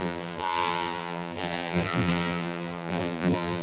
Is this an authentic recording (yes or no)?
no